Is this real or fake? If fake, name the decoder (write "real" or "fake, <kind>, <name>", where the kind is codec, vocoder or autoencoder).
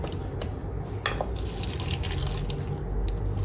real